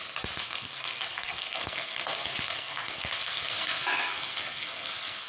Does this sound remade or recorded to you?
remade